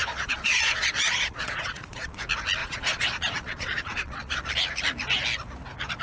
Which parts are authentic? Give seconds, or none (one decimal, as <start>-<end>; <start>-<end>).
2.2-2.6; 4.5-6.0